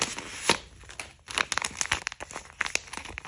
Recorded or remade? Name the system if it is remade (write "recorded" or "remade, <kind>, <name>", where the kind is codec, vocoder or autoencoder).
recorded